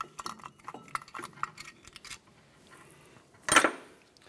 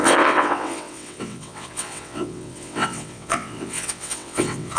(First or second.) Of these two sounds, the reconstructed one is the second